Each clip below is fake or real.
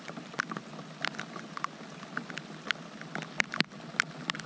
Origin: real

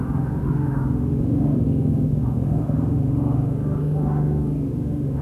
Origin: fake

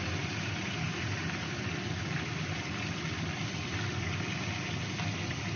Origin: real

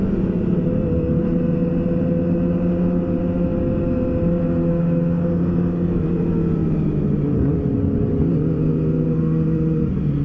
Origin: real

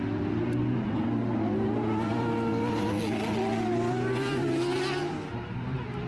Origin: real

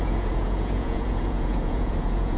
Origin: fake